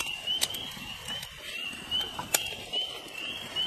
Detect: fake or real real